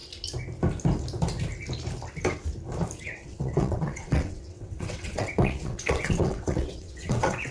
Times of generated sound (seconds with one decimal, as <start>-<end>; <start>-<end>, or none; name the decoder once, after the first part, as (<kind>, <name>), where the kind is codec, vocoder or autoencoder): 3.0-7.5 (vocoder, WaveNeXt)